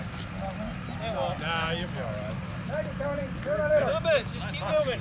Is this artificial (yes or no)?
no